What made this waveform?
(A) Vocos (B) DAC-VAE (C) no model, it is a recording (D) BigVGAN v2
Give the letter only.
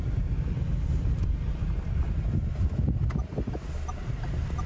C